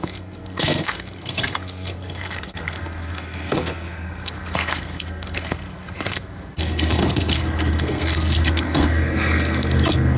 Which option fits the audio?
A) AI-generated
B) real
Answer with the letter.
A